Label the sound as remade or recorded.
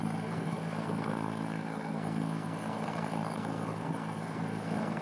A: remade